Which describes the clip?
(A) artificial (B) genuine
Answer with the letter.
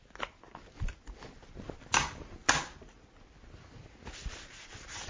B